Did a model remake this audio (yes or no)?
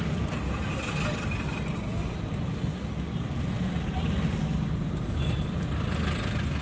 no